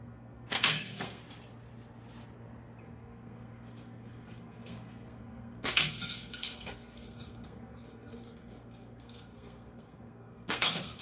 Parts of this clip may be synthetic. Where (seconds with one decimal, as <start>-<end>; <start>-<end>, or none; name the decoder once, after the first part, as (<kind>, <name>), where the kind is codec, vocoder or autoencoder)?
0.0-1.2 (codec, SNAC); 2.8-11.0